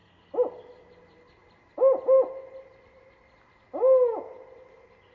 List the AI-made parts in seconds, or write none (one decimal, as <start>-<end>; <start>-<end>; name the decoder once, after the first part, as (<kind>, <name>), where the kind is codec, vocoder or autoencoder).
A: none